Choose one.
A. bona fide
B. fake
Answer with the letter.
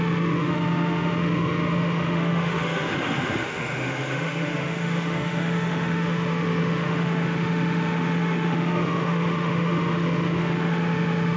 B